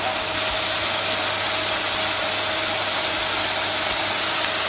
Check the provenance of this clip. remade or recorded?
recorded